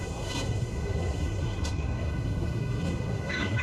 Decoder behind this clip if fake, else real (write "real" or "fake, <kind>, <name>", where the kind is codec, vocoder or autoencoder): fake, codec, SNAC